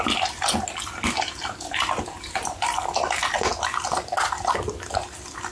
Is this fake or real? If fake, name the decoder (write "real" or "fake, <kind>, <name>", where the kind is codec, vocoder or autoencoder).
real